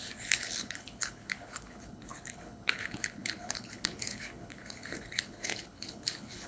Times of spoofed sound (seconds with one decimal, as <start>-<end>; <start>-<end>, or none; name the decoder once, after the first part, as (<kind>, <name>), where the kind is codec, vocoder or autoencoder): 0.0-6.5 (codec, HILCodec)